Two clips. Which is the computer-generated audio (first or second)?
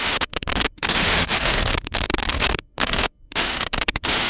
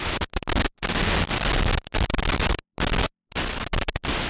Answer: first